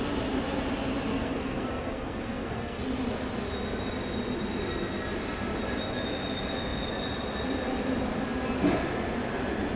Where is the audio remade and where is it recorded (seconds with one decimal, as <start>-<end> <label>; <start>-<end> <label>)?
0.0-1.1 recorded; 1.1-2.8 remade; 2.8-9.8 recorded